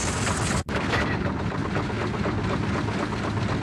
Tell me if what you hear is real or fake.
real